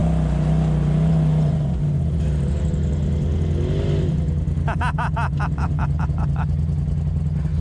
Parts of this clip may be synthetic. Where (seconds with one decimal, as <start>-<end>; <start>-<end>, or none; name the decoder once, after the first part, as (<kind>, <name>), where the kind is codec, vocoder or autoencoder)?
none

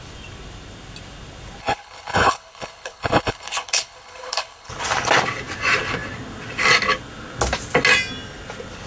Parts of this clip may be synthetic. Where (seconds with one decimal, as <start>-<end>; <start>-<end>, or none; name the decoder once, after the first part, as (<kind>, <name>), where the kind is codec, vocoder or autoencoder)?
1.6-4.7 (codec, HILCodec)